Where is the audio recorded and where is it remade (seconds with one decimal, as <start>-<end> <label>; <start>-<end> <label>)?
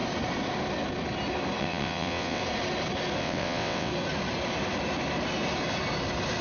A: 0.0-1.6 recorded; 1.6-2.4 remade; 2.4-3.2 recorded; 3.2-3.9 remade; 3.9-6.4 recorded